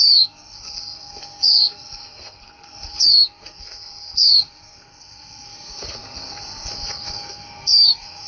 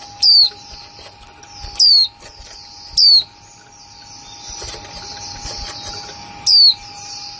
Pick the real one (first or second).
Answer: second